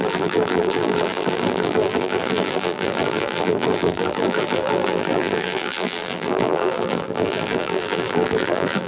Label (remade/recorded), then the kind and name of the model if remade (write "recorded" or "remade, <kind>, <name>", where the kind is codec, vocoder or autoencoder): remade, vocoder, BigVGAN v2